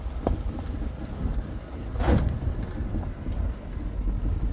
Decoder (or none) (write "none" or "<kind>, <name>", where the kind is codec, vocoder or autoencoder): none